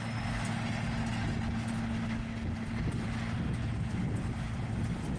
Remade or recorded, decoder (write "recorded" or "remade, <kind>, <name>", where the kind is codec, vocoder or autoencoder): recorded